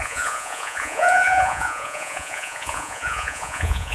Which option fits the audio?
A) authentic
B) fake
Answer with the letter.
B